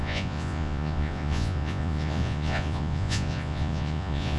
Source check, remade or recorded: remade